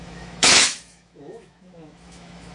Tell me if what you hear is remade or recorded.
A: remade